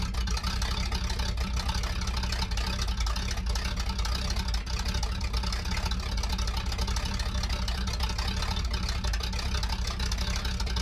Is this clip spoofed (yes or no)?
no